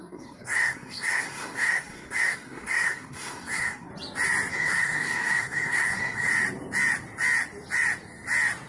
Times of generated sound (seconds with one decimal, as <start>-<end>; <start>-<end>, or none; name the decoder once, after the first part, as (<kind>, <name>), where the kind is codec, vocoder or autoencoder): 0.0-3.9 (codec, SNAC); 4.5-6.3